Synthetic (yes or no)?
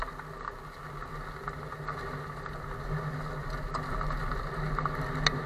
no